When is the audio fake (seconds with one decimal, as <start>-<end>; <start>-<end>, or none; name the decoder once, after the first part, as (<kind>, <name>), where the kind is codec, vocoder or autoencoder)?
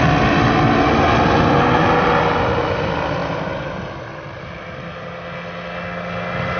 none